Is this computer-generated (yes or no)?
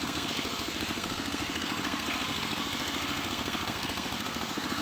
yes